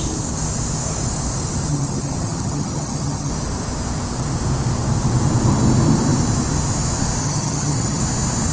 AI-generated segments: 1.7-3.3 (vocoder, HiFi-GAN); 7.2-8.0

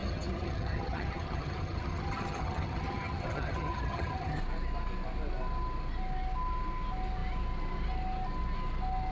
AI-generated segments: 0.0-4.4 (vocoder, HiFi-GAN)

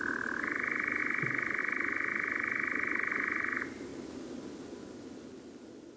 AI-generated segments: none

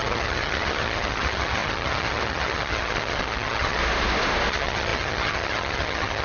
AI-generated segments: 0.0-3.8 (vocoder, HiFi-GAN); 4.5-6.2

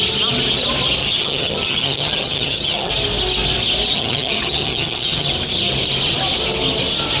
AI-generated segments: 1.0-2.9 (vocoder, HiFi-GAN); 3.9-5.3

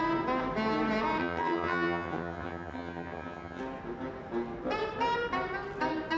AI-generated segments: 1.2-3.6 (vocoder, HiFi-GAN)

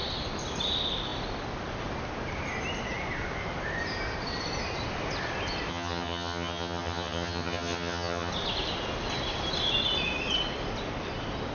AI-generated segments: 5.7-8.3 (vocoder, HiFi-GAN)